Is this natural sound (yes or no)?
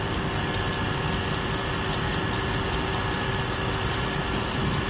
yes